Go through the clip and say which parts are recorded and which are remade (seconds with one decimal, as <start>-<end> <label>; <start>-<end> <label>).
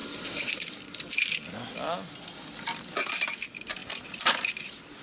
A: 0.0-0.7 remade; 0.7-3.8 recorded; 3.8-4.3 remade; 4.3-5.0 recorded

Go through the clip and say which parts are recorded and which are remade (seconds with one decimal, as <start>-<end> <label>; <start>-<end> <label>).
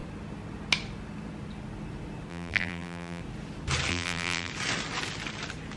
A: 0.0-2.3 recorded; 2.3-3.2 remade; 3.2-3.9 recorded; 3.9-4.5 remade; 4.5-5.8 recorded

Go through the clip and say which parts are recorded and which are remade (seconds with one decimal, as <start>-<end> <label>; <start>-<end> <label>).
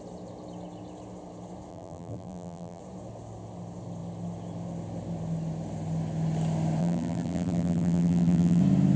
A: 0.0-1.7 recorded; 1.7-2.8 remade; 2.8-6.8 recorded; 6.8-8.6 remade; 8.6-9.0 recorded